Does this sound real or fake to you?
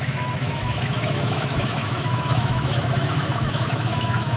fake